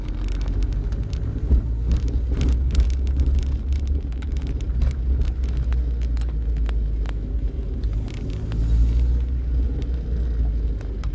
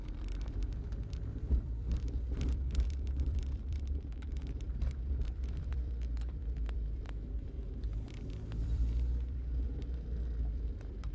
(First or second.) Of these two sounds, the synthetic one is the second